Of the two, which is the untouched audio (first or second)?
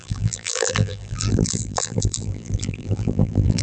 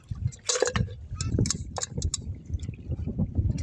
second